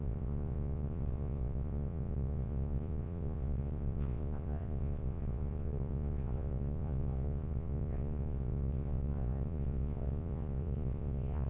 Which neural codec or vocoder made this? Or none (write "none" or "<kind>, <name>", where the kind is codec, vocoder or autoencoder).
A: vocoder, Vocos